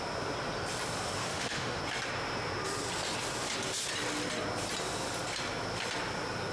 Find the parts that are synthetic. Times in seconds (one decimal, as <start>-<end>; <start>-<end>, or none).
1.2-1.8